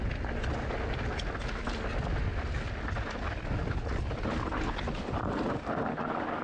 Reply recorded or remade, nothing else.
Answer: recorded